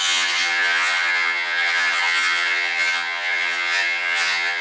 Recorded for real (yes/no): no